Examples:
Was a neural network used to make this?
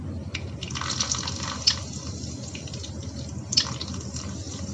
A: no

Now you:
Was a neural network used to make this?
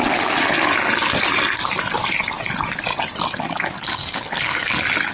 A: no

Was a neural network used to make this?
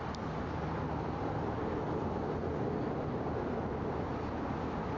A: no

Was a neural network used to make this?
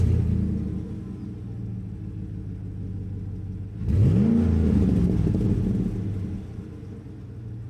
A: no